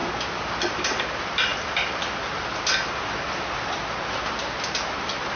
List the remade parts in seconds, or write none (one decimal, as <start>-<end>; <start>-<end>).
none

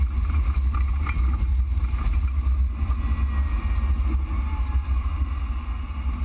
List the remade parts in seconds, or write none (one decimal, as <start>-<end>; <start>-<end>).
none

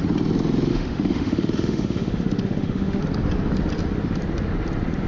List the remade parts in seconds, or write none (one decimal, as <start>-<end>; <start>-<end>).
0.7-3.0